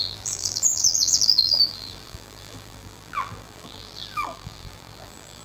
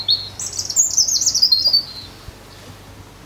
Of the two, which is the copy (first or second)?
first